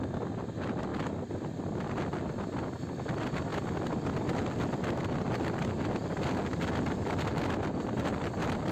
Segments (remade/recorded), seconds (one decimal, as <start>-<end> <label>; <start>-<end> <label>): 0.0-8.7 recorded

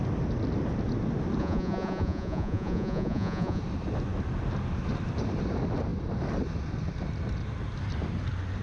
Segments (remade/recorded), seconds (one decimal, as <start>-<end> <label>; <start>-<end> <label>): 0.0-1.4 recorded; 1.4-3.6 remade; 3.6-8.6 recorded

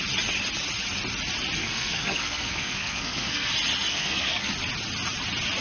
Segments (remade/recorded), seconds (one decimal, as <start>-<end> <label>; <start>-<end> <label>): 0.0-1.6 recorded; 1.6-3.5 remade; 3.5-3.9 recorded; 3.9-4.5 remade; 4.5-5.6 recorded

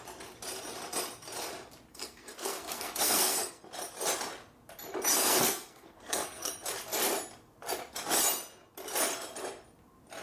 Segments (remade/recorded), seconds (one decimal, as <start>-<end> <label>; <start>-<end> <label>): 0.0-1.9 recorded; 1.9-3.6 remade; 3.6-5.1 recorded; 5.1-6.5 remade; 6.5-10.2 recorded

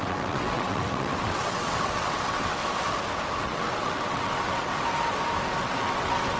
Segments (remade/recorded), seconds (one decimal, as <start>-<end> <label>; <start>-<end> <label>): 0.0-2.6 remade; 2.6-3.4 recorded; 3.4-4.7 remade; 4.7-5.6 recorded; 5.6-6.4 remade

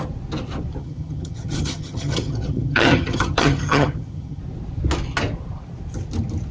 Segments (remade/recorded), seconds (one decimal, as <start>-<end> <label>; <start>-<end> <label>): 0.0-0.8 recorded; 0.8-4.4 remade; 4.4-6.5 recorded

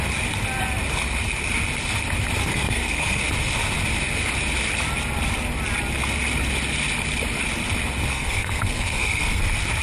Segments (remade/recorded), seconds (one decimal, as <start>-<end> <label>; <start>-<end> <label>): 0.0-2.5 recorded; 2.5-3.2 remade; 3.2-8.1 recorded; 8.1-9.4 remade; 9.4-9.8 recorded

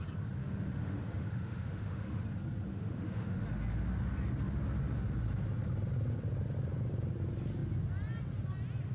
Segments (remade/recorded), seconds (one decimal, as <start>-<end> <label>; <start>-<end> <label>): 0.0-0.4 recorded; 0.4-2.2 remade; 2.2-2.7 recorded; 2.7-3.4 remade; 3.4-8.9 recorded